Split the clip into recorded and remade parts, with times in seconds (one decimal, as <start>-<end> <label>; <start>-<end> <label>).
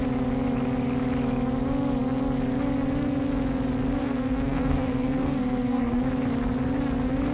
0.0-4.0 recorded; 4.0-6.0 remade; 6.0-7.3 recorded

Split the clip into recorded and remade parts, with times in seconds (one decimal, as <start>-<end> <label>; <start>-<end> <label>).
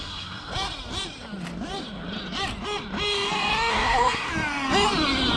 0.0-0.5 remade; 0.5-3.7 recorded; 3.7-4.3 remade; 4.3-5.4 recorded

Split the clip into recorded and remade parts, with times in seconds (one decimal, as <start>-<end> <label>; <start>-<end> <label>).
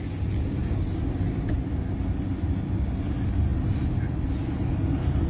0.0-5.3 recorded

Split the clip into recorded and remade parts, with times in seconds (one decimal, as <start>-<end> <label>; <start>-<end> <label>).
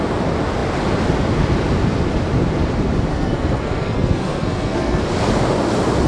0.0-3.1 recorded; 3.1-5.0 remade; 5.0-6.1 recorded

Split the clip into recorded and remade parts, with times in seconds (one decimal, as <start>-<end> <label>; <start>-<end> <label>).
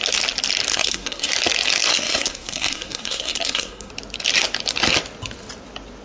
0.0-0.7 recorded; 0.7-1.3 remade; 1.3-1.9 recorded; 1.9-3.9 remade; 3.9-6.0 recorded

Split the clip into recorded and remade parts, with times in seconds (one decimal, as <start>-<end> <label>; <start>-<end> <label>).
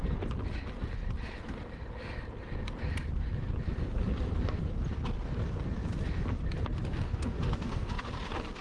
0.0-6.9 recorded; 6.9-8.0 remade; 8.0-8.6 recorded